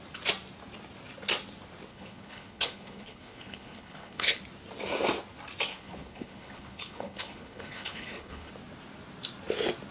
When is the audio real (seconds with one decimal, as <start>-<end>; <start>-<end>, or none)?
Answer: 0.0-1.9; 4.4-5.7; 8.5-9.9